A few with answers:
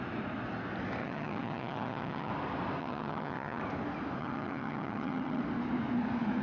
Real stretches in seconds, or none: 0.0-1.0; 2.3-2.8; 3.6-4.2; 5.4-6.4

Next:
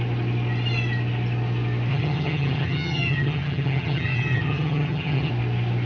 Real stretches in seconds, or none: 0.0-1.9; 5.3-5.9

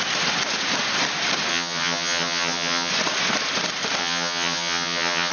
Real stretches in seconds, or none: 0.0-1.5; 2.9-4.0

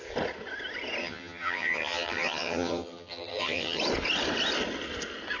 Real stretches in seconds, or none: 0.0-1.0; 3.8-5.4

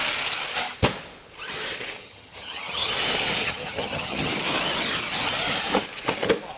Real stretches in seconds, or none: 0.0-2.0; 2.9-3.4; 4.3-6.6

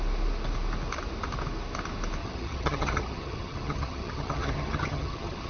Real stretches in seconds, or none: 0.0-2.2